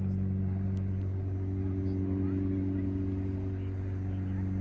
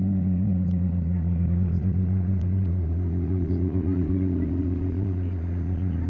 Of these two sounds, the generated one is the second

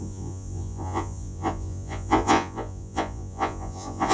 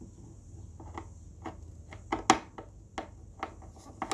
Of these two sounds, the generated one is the first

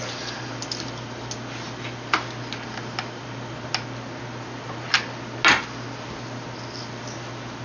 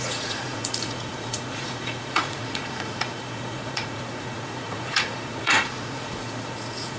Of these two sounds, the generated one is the second